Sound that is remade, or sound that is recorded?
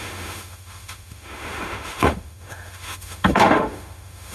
remade